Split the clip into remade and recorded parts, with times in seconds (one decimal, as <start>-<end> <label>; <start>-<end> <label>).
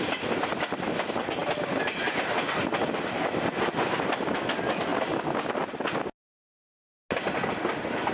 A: 0.0-8.1 recorded